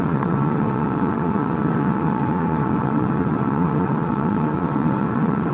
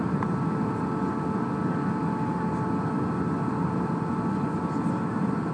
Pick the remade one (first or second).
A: first